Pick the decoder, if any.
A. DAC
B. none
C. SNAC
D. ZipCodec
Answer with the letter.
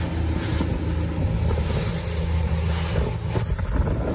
B